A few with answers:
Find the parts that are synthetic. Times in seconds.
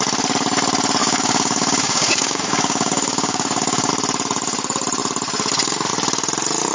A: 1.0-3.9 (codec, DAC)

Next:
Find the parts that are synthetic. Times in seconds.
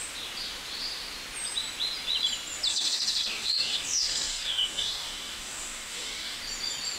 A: 2.7-6.4 (codec, DAC)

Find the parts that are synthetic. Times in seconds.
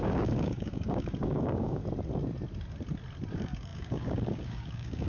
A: 0.0-1.8 (codec, DAC); 3.3-5.1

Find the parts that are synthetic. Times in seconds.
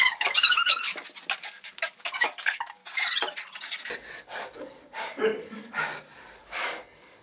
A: 0.0-0.9 (codec, DAC); 1.4-2.8; 4.2-7.2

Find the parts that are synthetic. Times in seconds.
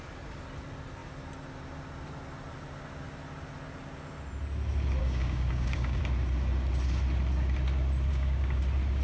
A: 5.0-6.0 (codec, DAC); 8.1-8.6